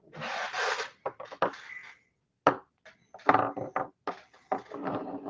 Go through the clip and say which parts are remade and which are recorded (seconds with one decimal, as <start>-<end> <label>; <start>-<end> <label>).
0.0-5.3 recorded